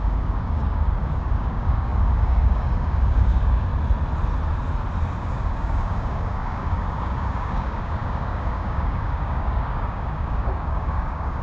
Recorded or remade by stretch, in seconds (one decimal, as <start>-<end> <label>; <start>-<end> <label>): 0.0-3.7 remade; 3.7-5.2 recorded; 5.2-11.4 remade

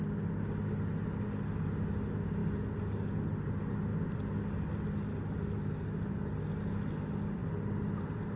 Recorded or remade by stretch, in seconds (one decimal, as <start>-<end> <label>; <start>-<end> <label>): 0.0-8.4 recorded

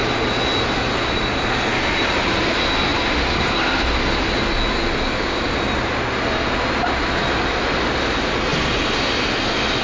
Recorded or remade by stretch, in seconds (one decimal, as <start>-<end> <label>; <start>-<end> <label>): 0.0-9.8 recorded